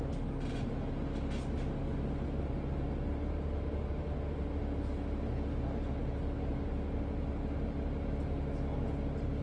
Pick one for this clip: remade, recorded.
recorded